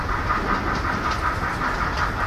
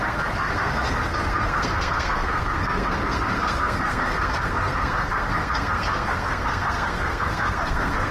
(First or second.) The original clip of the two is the first